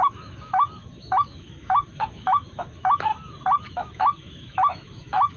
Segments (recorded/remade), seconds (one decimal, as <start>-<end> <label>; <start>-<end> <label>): 0.0-3.1 remade; 3.1-3.6 recorded; 3.6-5.4 remade